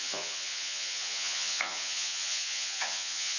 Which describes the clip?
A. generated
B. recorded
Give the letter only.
A